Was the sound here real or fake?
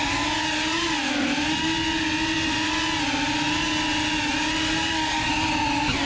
real